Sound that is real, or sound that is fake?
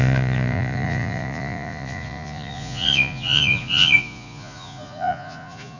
fake